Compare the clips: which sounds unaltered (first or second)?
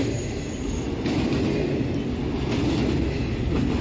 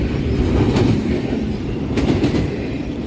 first